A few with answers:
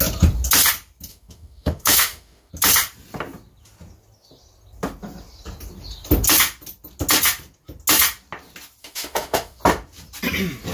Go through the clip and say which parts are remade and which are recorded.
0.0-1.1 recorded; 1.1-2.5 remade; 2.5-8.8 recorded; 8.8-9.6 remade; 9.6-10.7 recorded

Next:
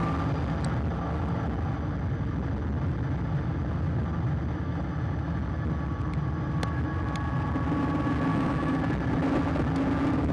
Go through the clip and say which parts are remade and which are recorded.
0.0-8.3 recorded; 8.3-8.8 remade; 8.8-10.3 recorded

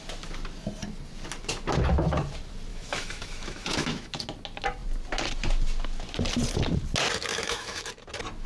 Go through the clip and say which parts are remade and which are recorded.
0.0-2.7 recorded; 2.7-4.2 remade; 4.2-7.3 recorded; 7.3-7.9 remade; 7.9-8.5 recorded

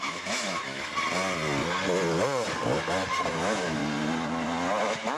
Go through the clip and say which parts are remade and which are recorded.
0.0-0.9 remade; 0.9-3.3 recorded; 3.3-3.8 remade; 3.8-4.8 recorded; 4.8-5.2 remade